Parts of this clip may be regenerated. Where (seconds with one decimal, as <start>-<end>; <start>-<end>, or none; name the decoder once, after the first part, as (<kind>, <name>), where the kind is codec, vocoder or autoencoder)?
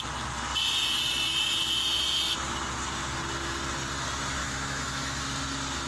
4.4-5.2 (autoencoder, DAC-VAE)